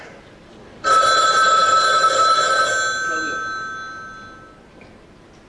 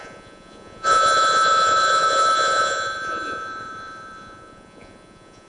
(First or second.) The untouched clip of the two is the first